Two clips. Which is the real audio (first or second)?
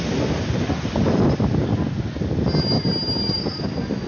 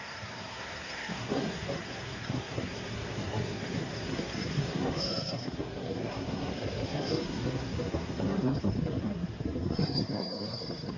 first